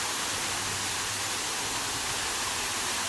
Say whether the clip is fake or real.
real